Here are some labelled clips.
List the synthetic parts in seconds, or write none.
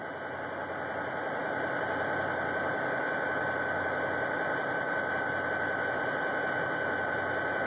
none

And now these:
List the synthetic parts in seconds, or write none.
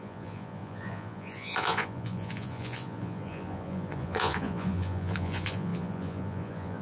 0.0-6.8 (vocoder, Vocos)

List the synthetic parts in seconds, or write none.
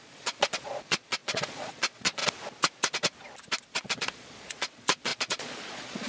0.0-2.2 (vocoder, Vocos); 3.8-6.1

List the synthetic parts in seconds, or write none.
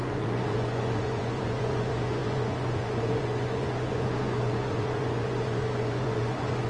0.0-6.7 (vocoder, Vocos)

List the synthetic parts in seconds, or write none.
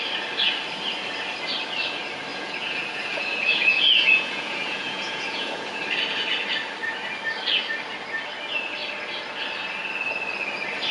2.3-5.8 (vocoder, Vocos)